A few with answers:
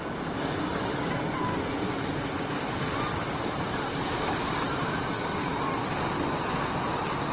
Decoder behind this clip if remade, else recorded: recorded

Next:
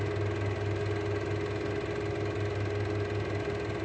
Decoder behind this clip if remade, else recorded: recorded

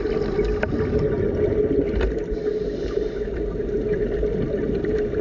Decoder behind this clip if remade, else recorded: recorded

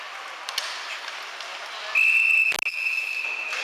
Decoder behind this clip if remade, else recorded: recorded